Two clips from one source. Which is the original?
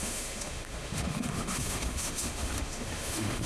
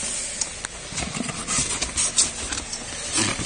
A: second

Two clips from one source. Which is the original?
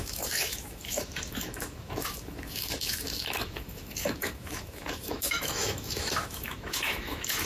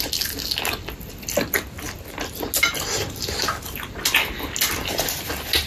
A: second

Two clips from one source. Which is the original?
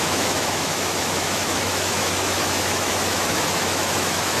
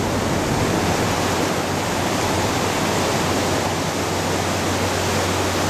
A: second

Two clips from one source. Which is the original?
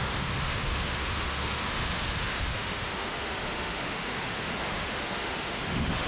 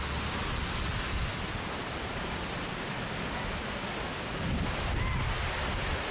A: second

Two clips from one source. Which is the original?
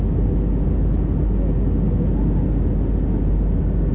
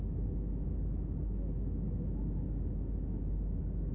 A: first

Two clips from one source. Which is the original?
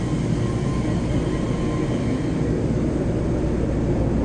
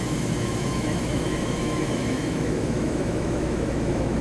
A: first